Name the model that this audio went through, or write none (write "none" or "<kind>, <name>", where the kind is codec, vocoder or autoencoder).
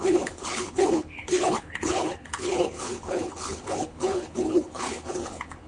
codec, HILCodec